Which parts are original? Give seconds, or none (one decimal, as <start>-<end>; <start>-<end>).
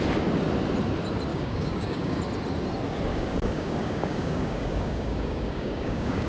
0.0-1.3; 2.2-3.1